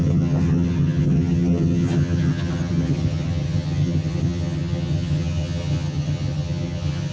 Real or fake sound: fake